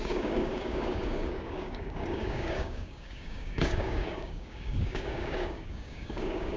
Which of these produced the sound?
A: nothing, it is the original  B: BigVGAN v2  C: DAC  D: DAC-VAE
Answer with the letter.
C